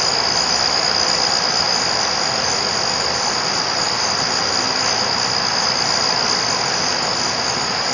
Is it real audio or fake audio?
real